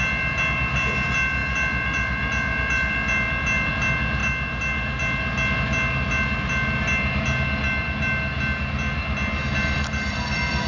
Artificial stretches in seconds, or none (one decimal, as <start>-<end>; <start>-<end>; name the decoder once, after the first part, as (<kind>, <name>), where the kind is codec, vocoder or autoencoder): none